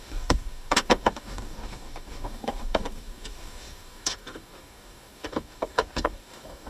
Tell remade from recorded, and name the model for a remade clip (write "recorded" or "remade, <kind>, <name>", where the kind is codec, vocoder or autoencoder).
remade, codec, DAC